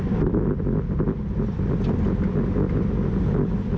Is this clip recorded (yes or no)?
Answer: yes